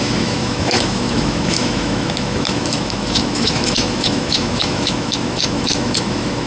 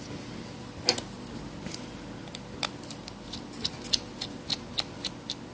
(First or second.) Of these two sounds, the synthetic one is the first